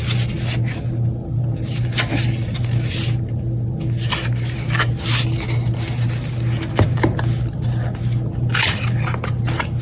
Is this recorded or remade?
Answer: recorded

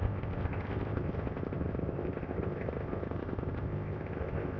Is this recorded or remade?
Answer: remade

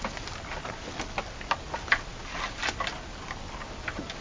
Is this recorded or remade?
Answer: recorded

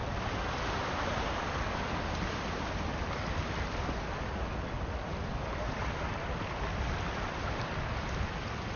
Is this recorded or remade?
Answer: recorded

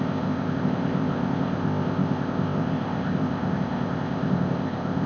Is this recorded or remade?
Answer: remade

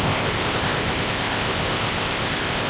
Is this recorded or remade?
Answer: remade